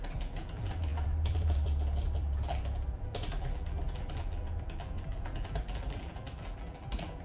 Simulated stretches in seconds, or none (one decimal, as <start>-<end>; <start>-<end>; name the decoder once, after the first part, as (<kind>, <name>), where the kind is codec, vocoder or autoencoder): 0.0-7.2 (vocoder, BigVGAN v2)